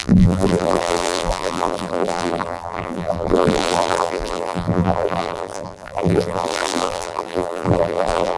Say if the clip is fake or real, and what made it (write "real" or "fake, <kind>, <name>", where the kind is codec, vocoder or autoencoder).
fake, vocoder, BigVGAN v2